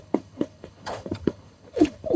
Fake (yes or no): yes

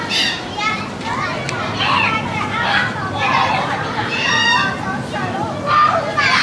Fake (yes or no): no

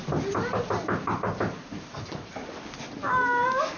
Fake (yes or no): no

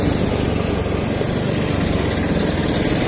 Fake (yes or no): no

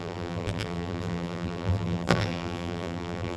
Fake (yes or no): yes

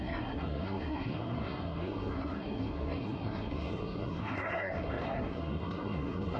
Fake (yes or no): yes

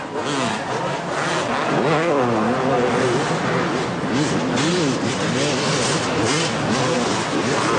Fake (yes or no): no